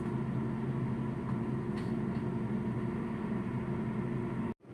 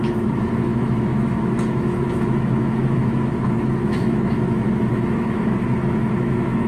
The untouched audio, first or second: first